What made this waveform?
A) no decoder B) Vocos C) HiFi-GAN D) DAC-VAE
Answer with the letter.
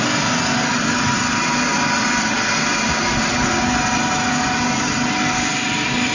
A